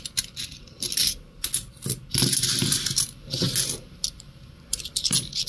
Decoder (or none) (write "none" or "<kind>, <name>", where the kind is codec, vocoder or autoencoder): none